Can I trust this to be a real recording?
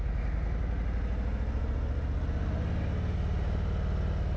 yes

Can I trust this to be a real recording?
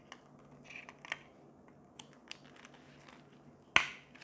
yes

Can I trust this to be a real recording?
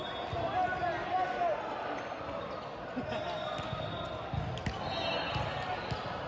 yes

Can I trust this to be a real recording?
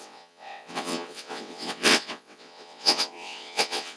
no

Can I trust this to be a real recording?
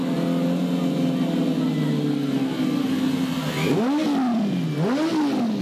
yes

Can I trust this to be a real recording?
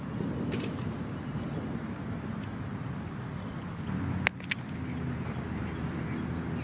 yes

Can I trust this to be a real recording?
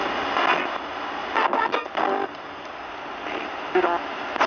yes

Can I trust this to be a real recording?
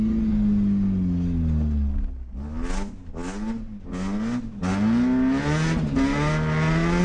yes